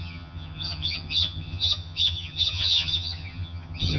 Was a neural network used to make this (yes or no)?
yes